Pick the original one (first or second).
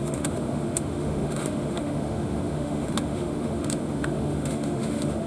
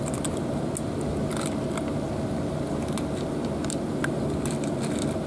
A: second